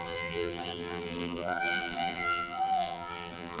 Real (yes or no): no